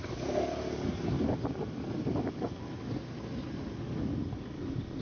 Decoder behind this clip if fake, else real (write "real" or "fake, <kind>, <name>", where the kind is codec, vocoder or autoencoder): real